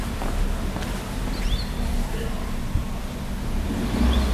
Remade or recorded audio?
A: recorded